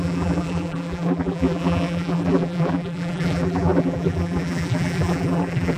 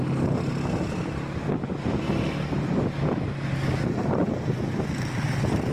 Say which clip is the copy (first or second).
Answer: first